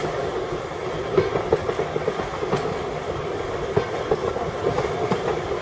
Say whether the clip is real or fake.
real